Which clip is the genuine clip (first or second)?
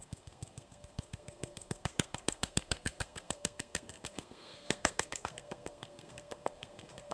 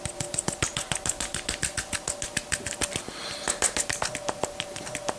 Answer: second